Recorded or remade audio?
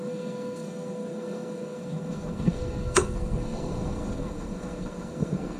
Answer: remade